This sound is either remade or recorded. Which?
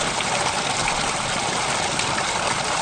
recorded